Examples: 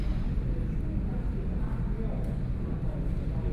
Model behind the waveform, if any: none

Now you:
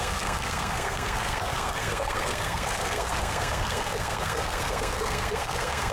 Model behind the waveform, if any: codec, SNAC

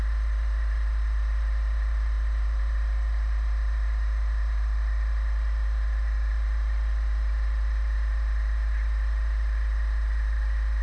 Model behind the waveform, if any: vocoder, BigVGAN v2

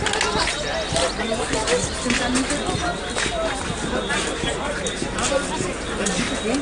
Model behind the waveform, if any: none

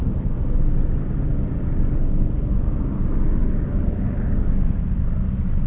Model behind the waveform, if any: none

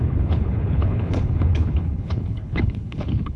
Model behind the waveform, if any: codec, HILCodec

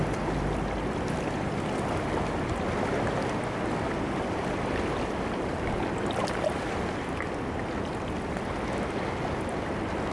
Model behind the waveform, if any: none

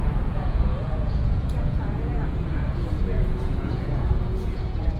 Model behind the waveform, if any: vocoder, Vocos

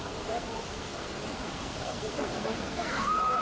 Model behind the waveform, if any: codec, SNAC